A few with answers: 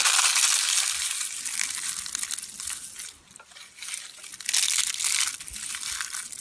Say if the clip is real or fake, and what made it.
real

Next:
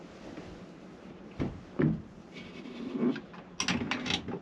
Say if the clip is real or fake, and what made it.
real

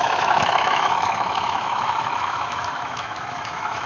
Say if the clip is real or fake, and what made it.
fake, autoencoder, DAC-VAE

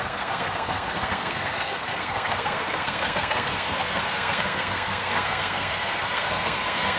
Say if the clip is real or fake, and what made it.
fake, codec, SNAC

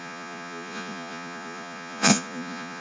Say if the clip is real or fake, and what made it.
fake, vocoder, Vocos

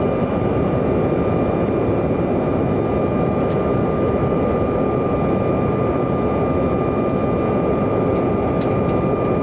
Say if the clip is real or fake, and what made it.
real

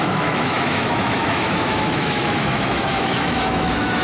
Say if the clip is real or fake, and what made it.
fake, autoencoder, DAC-VAE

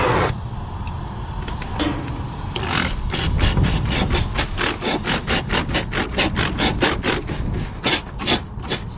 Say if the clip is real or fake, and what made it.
real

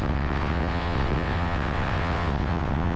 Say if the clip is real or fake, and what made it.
fake, vocoder, WaveNeXt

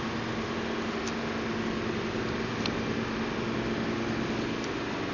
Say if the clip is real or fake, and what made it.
real